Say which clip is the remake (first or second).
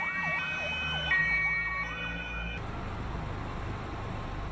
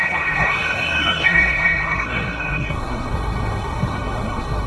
second